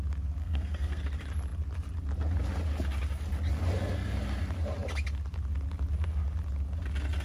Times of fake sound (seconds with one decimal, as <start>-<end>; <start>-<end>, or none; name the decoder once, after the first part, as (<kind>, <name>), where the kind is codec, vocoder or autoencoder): 0.4-1.0 (codec, SNAC)